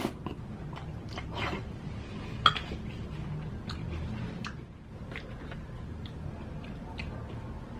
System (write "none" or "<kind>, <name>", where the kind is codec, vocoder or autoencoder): none